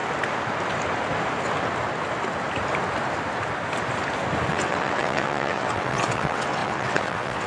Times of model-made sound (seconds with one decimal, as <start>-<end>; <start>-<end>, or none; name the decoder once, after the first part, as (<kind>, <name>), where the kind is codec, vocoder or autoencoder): 4.5-7.5 (vocoder, WaveNeXt)